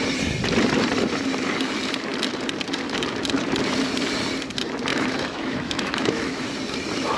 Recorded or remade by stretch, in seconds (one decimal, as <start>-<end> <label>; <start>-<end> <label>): 0.0-4.9 recorded; 4.9-6.4 remade; 6.4-7.2 recorded